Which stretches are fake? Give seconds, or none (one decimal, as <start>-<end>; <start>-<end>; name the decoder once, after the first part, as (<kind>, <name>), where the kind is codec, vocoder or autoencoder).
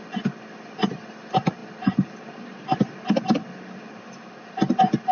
none